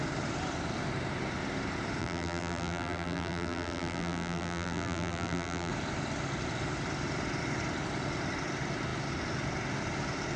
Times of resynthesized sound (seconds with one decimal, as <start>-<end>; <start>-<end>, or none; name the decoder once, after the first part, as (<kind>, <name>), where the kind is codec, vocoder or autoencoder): 2.0-5.7 (vocoder, BigVGAN v2)